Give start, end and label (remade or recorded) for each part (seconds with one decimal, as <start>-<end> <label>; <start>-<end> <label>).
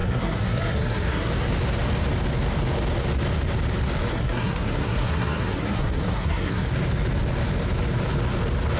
0.0-1.3 remade; 1.3-4.1 recorded; 4.1-6.7 remade; 6.7-8.8 recorded